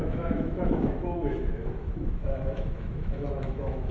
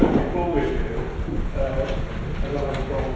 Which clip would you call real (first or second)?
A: second